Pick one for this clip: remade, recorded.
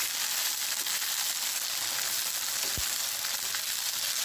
recorded